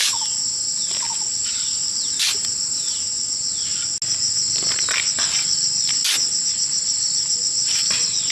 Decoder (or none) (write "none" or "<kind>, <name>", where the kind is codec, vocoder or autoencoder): none